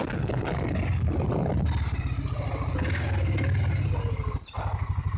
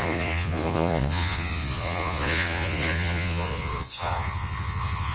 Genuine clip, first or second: first